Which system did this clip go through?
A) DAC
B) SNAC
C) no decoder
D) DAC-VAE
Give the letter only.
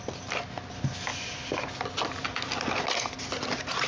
C